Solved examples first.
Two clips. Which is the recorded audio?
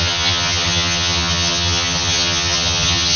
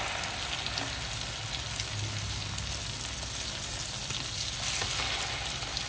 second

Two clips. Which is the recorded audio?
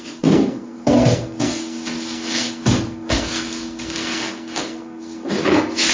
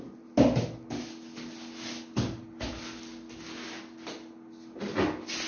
second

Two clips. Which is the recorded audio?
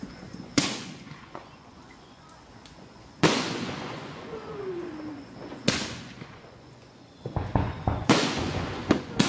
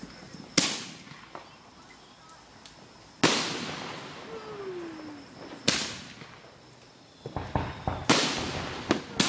second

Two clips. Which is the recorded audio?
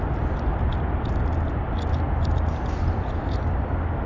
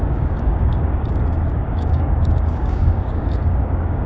first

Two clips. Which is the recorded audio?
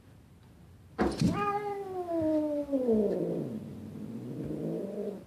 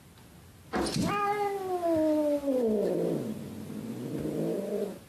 second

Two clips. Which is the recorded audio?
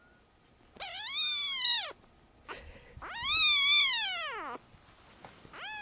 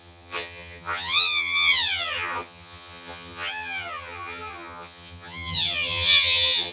first